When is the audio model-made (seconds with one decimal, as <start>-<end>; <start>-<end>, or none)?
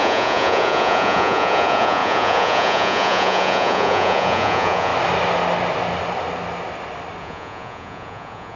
0.0-4.9; 7.2-8.6